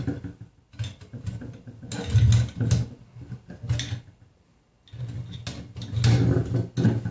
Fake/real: real